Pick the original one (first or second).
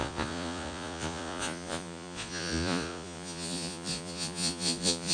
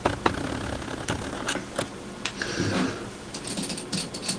second